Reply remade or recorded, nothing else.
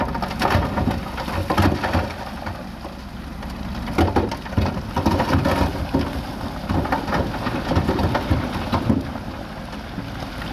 recorded